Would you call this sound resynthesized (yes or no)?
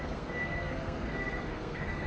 yes